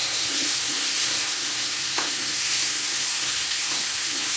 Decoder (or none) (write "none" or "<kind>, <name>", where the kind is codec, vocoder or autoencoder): codec, SNAC